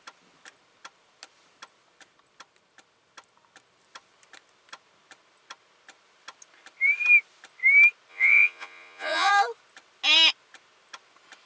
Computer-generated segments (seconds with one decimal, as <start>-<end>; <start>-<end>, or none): 8.1-9.3